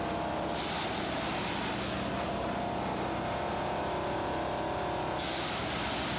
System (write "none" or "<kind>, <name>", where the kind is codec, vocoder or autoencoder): none